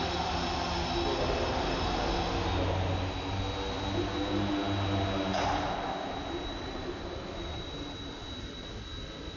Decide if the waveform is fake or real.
real